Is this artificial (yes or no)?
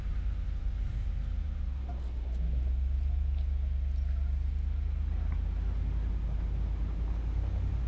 no